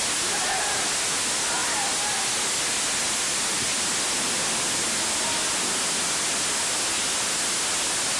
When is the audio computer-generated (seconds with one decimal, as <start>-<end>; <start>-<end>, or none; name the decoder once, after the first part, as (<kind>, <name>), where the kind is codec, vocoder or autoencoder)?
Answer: none